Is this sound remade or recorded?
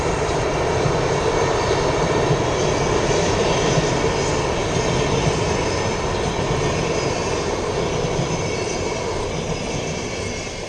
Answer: recorded